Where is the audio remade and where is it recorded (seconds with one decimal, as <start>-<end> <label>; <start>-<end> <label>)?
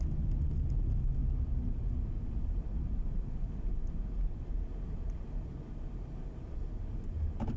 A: 0.0-7.6 recorded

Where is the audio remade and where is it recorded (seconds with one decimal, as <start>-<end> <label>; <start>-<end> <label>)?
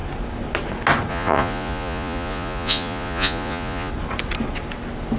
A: 0.0-1.1 recorded; 1.1-3.9 remade; 3.9-5.2 recorded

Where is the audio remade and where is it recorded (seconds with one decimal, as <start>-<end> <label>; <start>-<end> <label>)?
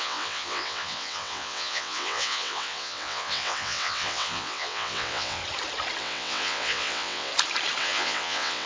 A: 0.0-5.4 remade; 5.4-6.0 recorded; 6.0-7.3 remade; 7.3-7.8 recorded; 7.8-8.7 remade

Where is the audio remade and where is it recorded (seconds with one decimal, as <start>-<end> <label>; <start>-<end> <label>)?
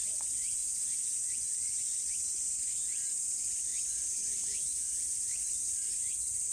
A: 0.0-2.1 remade; 2.1-3.7 recorded; 3.7-5.5 remade; 5.5-6.5 recorded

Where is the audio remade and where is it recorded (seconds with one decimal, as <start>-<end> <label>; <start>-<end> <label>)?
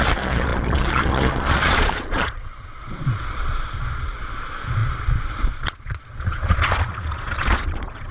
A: 0.0-8.1 remade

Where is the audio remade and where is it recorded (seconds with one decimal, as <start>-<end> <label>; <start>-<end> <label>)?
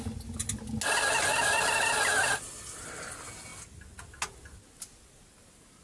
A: 0.0-5.8 recorded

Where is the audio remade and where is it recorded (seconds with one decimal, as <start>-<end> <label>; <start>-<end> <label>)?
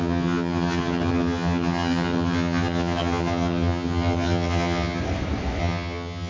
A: 0.0-5.0 remade; 5.0-5.6 recorded; 5.6-6.3 remade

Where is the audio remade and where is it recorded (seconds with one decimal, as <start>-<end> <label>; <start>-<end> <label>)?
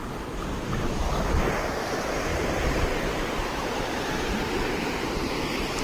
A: 0.0-2.3 recorded; 2.3-4.2 remade; 4.2-5.8 recorded